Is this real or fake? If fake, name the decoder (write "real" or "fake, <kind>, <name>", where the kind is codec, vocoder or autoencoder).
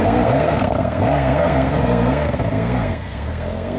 fake, codec, SNAC